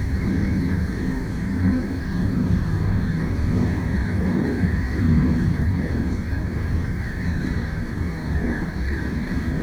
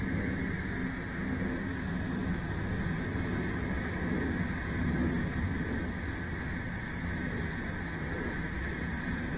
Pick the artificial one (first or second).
first